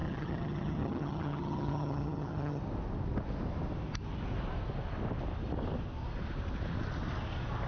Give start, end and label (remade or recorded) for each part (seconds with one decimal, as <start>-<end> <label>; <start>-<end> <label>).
0.0-2.6 remade; 2.6-7.7 recorded